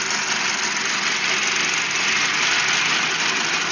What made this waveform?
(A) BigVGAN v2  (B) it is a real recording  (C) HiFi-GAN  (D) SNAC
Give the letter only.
B